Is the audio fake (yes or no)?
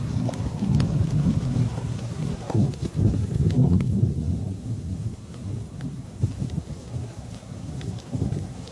yes